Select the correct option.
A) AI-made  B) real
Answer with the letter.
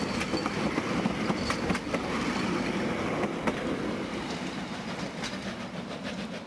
B